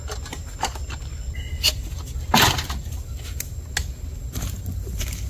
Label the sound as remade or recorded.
recorded